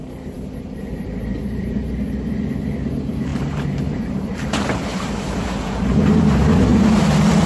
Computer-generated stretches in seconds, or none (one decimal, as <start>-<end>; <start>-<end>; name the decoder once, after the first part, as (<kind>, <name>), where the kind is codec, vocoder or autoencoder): 1.4-2.0 (vocoder, BigVGAN v2); 3.3-6.2; 6.7-7.5